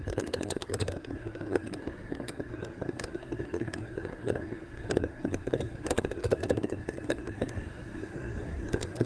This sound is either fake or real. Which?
fake